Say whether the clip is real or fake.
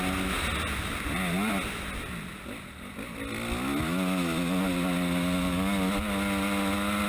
real